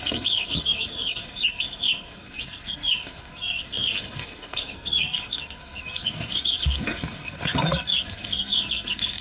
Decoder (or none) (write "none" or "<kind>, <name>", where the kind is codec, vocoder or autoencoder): codec, SNAC